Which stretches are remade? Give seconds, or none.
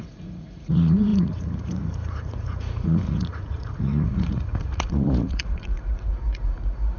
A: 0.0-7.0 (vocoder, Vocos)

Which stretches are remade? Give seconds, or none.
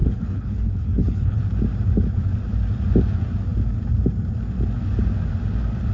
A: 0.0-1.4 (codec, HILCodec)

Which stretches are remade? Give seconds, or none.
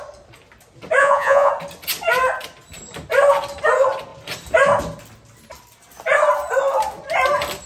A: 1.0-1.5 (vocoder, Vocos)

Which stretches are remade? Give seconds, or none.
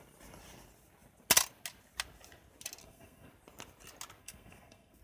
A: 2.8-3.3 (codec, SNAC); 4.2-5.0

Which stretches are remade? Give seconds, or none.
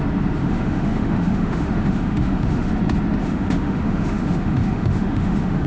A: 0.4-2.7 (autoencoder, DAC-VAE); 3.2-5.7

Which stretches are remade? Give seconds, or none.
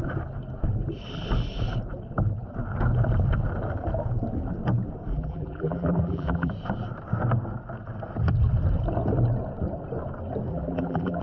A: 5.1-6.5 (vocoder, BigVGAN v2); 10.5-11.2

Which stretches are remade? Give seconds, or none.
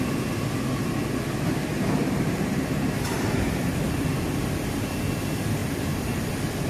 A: 1.7-3.6 (vocoder, BigVGAN v2); 5.6-6.3